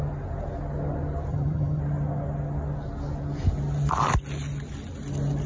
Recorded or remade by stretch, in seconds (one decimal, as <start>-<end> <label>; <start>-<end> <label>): 0.0-1.3 recorded; 1.3-1.8 remade; 1.8-5.5 recorded